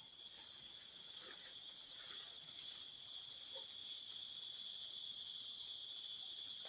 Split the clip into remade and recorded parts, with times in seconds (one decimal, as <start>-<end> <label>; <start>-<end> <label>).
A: 0.0-0.7 recorded; 0.7-3.2 remade; 3.2-6.7 recorded